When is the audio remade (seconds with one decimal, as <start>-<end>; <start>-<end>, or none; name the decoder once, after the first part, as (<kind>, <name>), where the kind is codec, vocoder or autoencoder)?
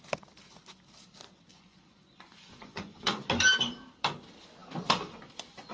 1.5-3.3 (vocoder, Vocos)